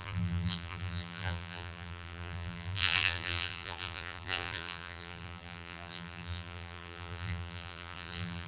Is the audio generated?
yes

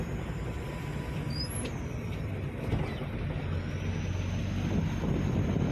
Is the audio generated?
no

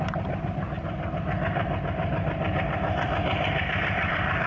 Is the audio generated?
yes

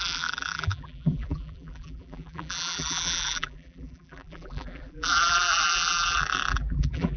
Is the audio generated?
yes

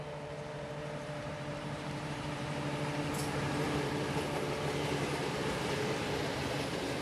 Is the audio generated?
yes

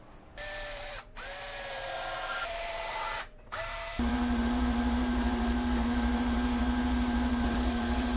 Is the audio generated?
yes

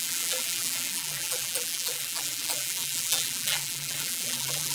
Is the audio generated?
yes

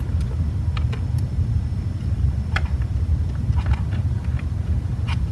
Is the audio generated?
no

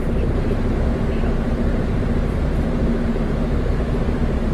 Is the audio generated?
yes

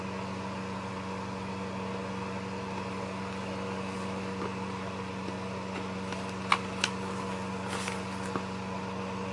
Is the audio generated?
no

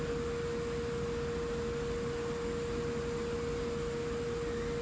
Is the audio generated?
no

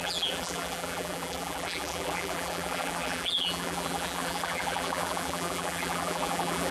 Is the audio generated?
yes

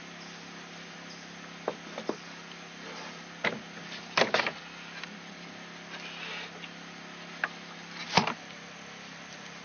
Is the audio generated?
no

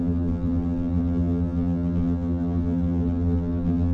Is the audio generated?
yes